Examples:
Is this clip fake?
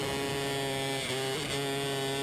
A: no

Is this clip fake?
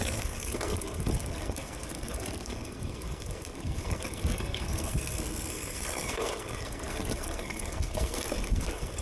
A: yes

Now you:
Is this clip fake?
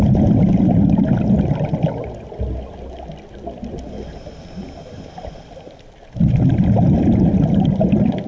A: no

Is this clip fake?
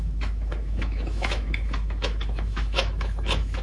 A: yes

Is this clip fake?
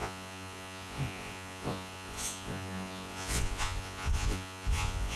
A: yes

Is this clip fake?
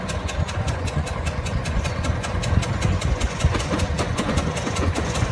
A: yes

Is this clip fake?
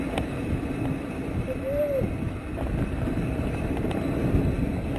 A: no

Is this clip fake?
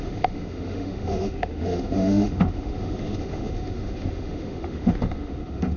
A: yes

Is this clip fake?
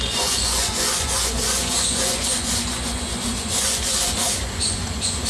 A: yes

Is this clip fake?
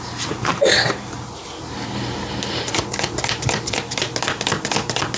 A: no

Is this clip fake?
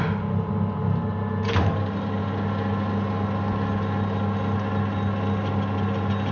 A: no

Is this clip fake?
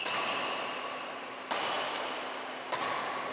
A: yes